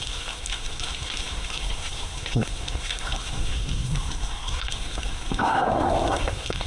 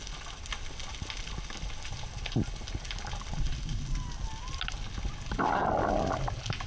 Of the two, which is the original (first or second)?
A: second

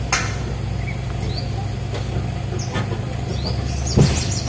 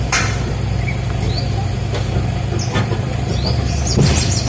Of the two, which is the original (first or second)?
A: first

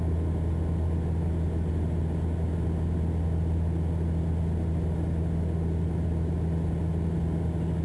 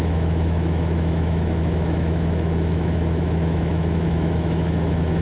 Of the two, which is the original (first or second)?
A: first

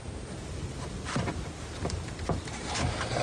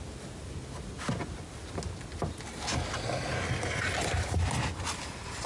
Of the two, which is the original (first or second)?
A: second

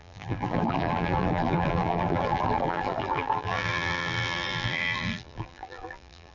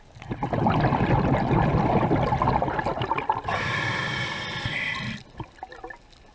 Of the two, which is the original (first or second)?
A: second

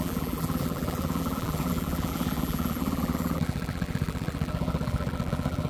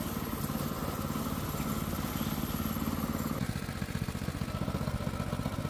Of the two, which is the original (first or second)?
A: second